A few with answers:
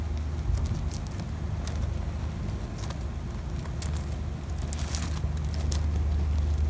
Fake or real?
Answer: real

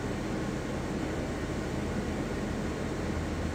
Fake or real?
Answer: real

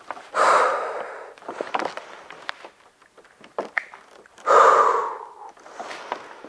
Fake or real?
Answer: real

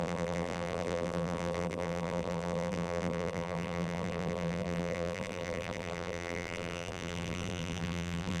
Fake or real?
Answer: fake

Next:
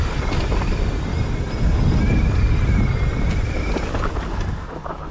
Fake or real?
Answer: real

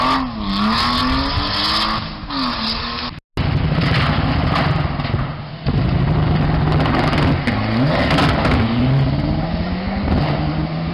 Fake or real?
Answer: real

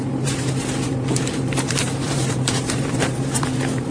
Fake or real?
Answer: fake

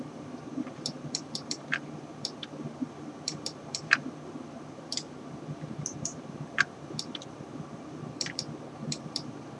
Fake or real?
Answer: fake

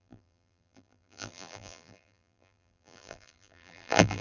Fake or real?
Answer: fake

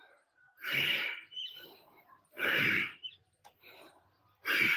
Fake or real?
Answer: fake